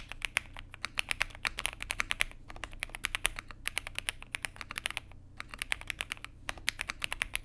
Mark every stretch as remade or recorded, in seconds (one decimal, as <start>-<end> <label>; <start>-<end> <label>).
0.0-5.5 recorded; 5.5-7.4 remade